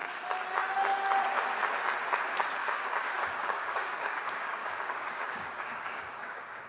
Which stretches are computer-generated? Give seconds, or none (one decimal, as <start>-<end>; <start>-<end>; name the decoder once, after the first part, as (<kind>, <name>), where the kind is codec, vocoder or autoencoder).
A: 2.6-6.7 (codec, DAC)